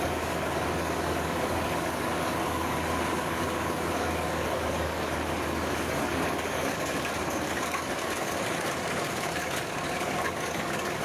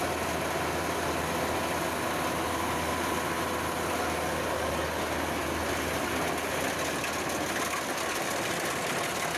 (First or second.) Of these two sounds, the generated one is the first